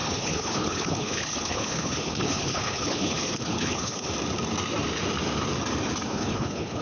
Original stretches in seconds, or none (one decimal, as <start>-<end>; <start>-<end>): 4.1-6.1